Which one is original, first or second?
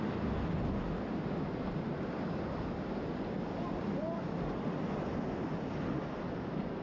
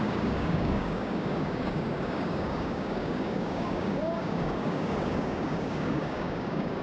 first